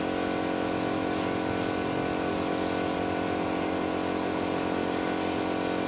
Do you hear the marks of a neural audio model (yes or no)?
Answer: no